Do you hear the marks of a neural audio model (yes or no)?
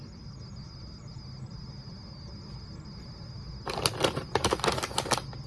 no